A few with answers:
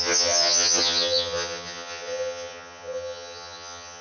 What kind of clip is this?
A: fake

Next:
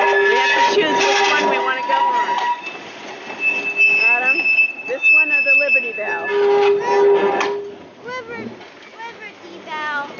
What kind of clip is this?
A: real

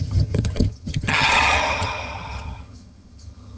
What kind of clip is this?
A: fake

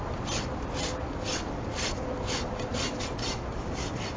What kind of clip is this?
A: real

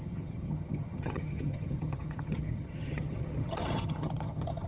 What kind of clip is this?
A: fake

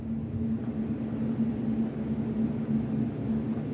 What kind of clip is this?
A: real